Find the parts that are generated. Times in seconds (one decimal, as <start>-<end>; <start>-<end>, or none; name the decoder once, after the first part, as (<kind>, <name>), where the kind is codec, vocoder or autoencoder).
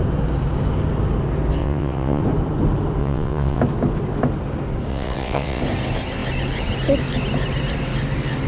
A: 1.6-2.2 (vocoder, WaveNeXt); 3.0-3.6; 4.9-5.6